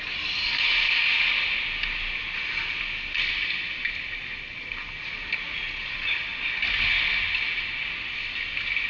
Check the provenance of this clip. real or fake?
real